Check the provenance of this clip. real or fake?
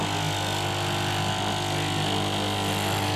real